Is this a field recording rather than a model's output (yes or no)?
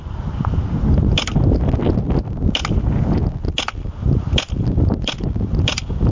yes